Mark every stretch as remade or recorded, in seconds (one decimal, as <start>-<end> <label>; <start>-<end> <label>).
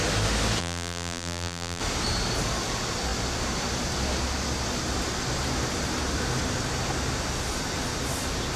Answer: 0.0-0.6 recorded; 0.6-1.8 remade; 1.8-8.6 recorded